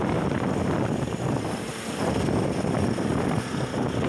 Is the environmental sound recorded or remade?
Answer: recorded